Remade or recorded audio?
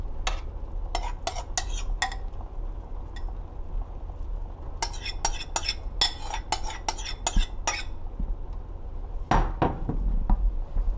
recorded